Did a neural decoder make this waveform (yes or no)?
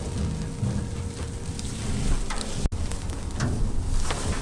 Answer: no